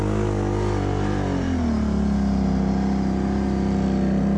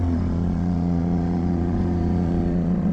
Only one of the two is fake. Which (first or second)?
second